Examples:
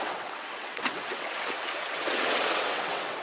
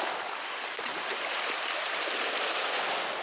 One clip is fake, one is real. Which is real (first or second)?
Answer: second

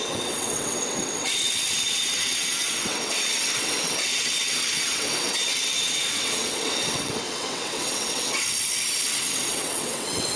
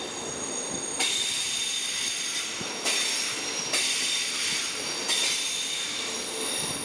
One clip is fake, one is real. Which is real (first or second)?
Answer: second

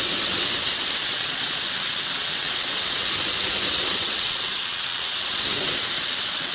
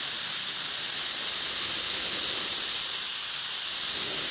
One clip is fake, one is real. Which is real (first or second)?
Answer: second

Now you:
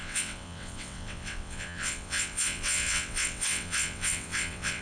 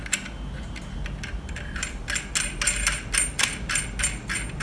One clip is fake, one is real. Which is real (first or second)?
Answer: second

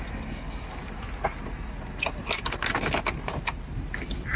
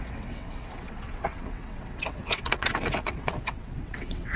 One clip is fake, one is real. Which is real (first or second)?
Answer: first